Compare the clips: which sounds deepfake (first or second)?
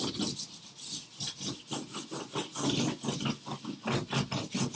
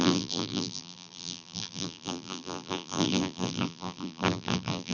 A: second